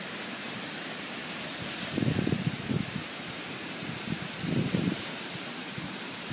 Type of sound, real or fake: fake